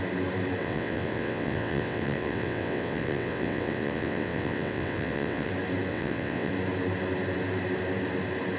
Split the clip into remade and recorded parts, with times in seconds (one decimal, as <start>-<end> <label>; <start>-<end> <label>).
0.0-0.6 recorded; 0.6-5.5 remade; 5.5-5.9 recorded; 5.9-6.5 remade; 6.5-8.6 recorded